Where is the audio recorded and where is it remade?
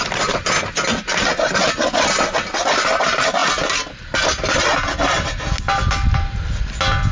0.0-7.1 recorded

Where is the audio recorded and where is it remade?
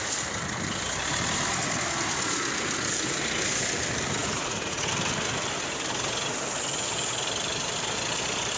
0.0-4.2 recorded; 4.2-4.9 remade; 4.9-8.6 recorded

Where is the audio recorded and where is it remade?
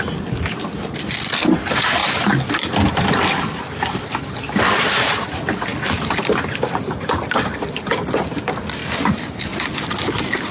0.0-10.5 recorded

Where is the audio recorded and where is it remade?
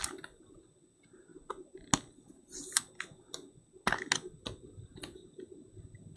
0.0-6.2 recorded